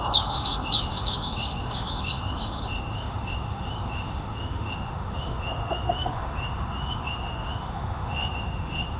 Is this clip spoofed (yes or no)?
yes